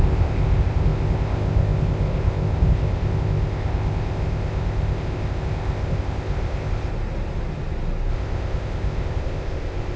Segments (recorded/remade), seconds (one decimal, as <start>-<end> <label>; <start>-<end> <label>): 0.0-6.9 remade; 6.9-8.1 recorded; 8.1-10.0 remade